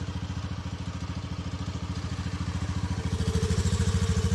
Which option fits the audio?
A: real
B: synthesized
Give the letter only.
A